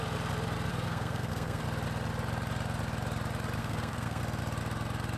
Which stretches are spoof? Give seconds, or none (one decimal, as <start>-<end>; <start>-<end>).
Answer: 0.7-1.6; 3.6-4.2